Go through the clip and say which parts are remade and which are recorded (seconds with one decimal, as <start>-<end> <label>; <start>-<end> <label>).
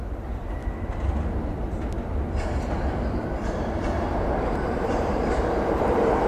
0.0-0.6 remade; 0.6-3.1 recorded; 3.1-6.3 remade